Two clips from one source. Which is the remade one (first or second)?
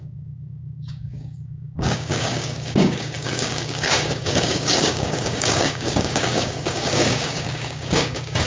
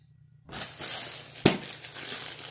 first